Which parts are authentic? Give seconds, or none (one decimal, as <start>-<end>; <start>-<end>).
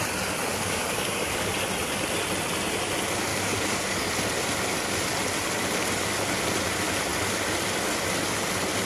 0.0-0.5; 1.5-3.3; 4.1-8.8